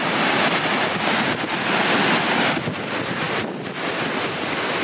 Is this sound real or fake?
real